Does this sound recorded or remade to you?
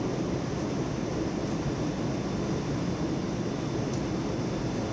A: recorded